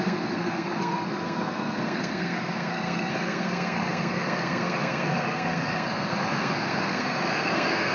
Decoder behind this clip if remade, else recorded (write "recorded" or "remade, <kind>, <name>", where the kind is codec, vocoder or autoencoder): remade, codec, SNAC